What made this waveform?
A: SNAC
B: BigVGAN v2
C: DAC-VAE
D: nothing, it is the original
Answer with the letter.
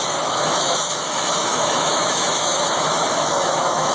C